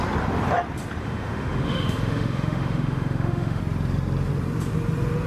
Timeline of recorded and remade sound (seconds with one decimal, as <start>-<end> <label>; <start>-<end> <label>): 0.0-1.0 recorded; 1.0-3.6 remade; 3.6-5.3 recorded